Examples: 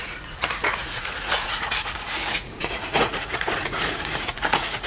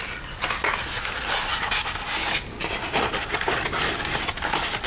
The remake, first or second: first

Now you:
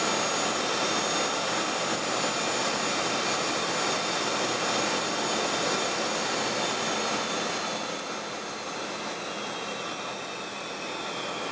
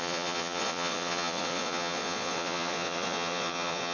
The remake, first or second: second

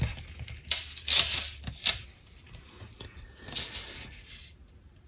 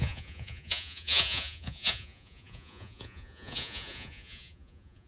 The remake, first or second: second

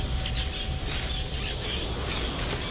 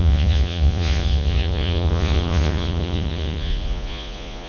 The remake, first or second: second